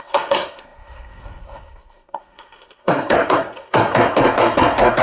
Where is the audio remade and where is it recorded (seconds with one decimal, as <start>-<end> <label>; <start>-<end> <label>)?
0.0-5.0 remade